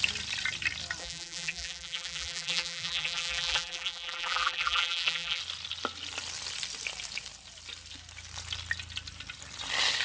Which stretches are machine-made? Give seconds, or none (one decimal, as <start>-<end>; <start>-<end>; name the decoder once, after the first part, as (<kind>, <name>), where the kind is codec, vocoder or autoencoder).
1.0-5.4 (vocoder, BigVGAN v2)